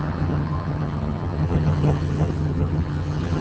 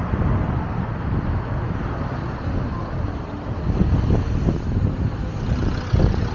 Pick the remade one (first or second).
first